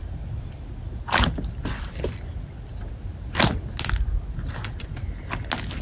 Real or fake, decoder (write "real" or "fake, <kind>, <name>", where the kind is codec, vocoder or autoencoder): real